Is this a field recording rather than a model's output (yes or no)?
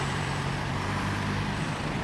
no